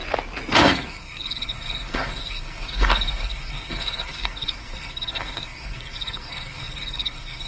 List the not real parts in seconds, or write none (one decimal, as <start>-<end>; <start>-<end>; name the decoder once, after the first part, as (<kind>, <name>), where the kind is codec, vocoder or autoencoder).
0.6-7.5 (codec, SNAC)